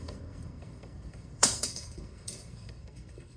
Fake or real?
fake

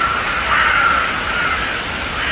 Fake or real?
real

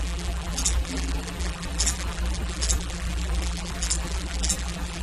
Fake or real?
fake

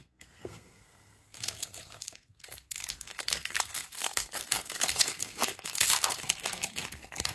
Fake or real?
fake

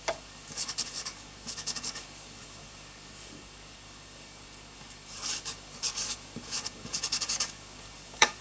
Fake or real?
fake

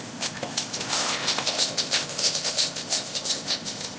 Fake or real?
fake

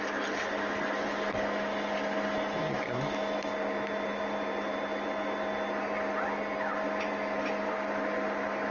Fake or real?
real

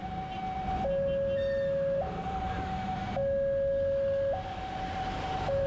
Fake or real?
real